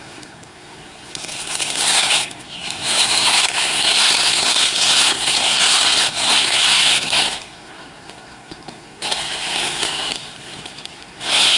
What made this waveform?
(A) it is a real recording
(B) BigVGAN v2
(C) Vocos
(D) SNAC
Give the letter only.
D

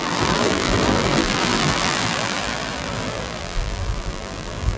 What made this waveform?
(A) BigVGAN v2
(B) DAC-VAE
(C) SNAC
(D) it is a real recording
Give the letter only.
A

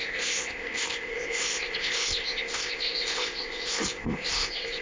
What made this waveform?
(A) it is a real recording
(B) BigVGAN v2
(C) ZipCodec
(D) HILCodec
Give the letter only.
C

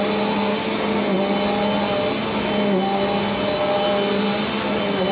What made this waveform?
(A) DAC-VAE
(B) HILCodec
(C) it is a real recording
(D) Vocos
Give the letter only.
C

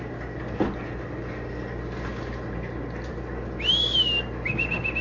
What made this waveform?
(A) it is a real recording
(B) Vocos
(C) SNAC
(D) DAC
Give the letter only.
A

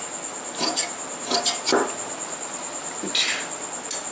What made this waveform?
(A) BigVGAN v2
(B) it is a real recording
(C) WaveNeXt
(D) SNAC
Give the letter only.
B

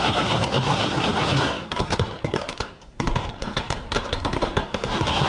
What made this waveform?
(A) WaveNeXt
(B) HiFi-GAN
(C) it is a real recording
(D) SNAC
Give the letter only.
D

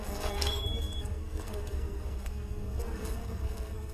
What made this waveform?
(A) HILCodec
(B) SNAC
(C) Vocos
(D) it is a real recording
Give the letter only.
B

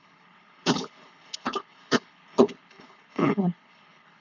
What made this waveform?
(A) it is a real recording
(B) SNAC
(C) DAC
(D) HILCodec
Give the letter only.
D